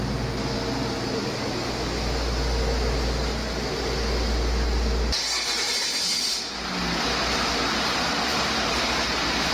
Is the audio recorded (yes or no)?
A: yes